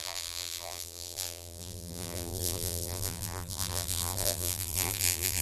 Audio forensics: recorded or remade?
remade